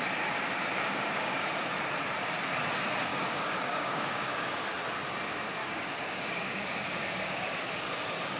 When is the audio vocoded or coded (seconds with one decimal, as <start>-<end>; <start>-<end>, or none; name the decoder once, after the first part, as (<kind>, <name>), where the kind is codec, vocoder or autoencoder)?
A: 0.7-1.5 (codec, DAC); 3.1-4.6; 5.6-7.8